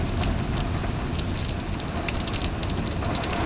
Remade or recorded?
recorded